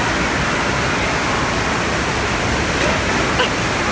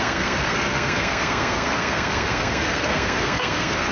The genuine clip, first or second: first